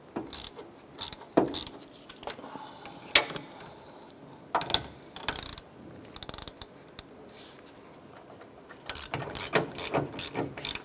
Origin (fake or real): real